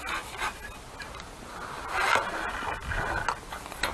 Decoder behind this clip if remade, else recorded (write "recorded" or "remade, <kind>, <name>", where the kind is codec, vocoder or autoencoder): recorded